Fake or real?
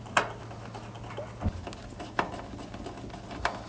real